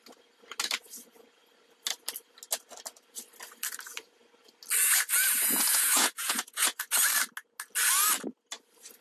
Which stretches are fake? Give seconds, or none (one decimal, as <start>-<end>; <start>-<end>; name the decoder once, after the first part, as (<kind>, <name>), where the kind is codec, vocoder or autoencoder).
4.8-6.9 (vocoder, Vocos)

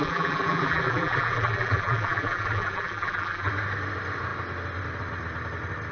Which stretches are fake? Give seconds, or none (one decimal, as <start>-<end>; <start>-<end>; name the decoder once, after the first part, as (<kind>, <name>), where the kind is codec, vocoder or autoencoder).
0.0-3.5 (vocoder, BigVGAN v2)

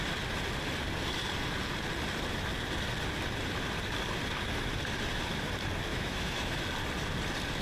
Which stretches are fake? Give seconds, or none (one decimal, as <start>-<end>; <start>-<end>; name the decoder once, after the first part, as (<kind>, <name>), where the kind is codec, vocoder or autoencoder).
5.9-6.6 (autoencoder, DAC-VAE)

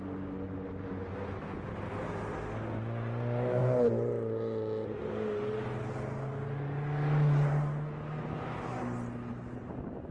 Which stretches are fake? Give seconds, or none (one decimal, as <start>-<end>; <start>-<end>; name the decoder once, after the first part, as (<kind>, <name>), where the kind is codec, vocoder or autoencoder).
none